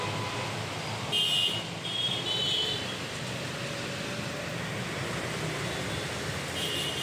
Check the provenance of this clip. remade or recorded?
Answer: recorded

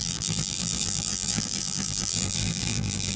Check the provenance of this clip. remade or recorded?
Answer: remade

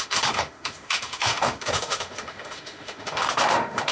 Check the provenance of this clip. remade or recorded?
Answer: remade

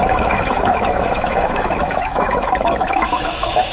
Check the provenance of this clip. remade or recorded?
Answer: remade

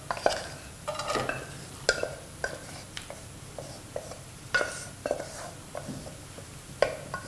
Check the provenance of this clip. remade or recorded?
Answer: recorded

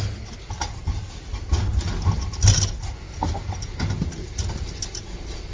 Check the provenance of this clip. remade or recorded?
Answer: recorded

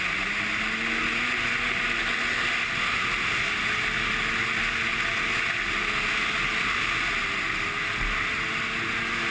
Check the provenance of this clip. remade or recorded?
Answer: recorded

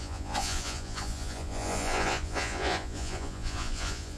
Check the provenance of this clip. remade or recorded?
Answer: remade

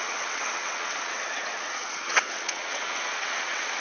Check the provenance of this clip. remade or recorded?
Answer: remade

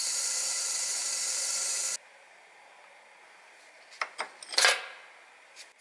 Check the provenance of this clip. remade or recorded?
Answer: recorded